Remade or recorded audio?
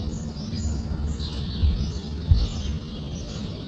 recorded